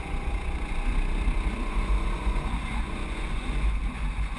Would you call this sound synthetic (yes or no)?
yes